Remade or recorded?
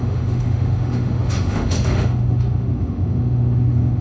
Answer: remade